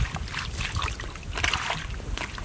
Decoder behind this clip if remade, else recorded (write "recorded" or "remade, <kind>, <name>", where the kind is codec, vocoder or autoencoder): recorded